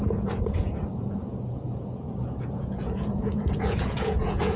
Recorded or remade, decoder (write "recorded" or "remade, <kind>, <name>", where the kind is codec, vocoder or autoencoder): remade, vocoder, Vocos